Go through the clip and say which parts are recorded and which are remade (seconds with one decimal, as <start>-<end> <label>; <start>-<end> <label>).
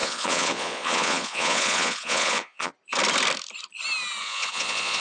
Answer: 0.0-2.7 remade; 2.7-4.2 recorded; 4.2-5.0 remade